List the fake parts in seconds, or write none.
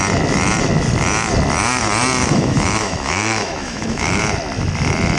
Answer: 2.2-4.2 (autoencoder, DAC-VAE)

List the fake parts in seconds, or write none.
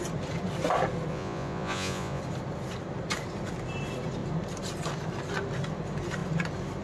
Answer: 1.1-2.2 (vocoder, Vocos)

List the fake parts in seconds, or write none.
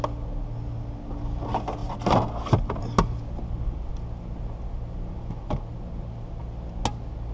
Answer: none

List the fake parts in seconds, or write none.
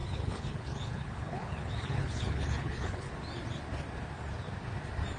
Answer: 0.0-3.1 (codec, HILCodec)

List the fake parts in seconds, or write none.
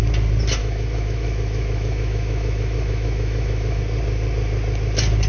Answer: 0.6-3.8 (autoencoder, DAC-VAE)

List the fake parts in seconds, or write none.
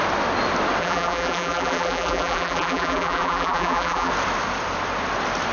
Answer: 0.8-4.1 (vocoder, BigVGAN v2)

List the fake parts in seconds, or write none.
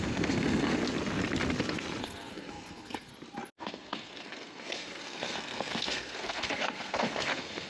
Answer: 0.0-0.8 (codec, SNAC); 2.0-3.1; 3.6-7.7